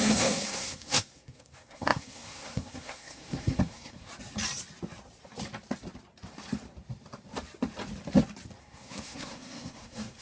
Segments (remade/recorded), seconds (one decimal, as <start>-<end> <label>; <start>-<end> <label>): 0.0-4.1 remade; 4.1-8.6 recorded; 8.6-10.2 remade